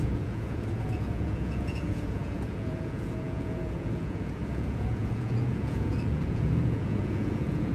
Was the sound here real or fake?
fake